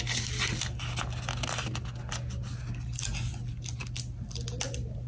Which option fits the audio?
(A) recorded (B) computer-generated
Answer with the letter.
A